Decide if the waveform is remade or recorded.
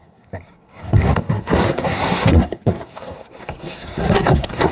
remade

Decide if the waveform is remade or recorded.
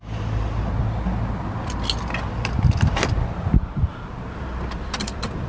recorded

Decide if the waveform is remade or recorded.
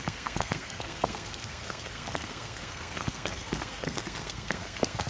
remade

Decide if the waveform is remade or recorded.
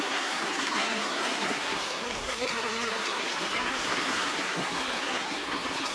remade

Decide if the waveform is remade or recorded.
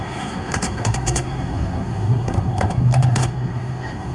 remade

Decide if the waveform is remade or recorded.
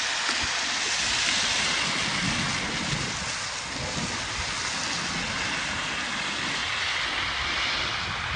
recorded